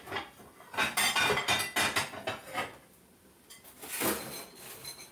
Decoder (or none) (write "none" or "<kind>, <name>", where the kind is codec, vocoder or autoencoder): none